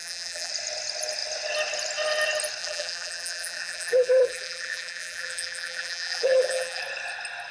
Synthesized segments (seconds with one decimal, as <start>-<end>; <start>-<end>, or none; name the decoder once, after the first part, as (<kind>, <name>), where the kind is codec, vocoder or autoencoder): 0.0-0.5 (vocoder, BigVGAN v2); 2.6-6.8